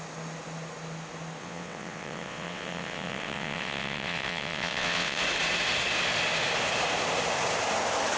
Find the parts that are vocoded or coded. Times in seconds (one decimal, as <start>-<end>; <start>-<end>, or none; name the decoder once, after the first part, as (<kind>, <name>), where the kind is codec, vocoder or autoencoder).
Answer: 1.4-5.2 (vocoder, WaveNeXt)